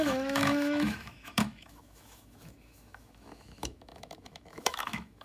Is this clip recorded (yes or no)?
no